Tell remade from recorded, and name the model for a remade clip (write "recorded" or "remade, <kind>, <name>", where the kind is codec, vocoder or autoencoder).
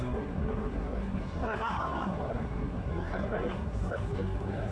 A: remade, codec, SNAC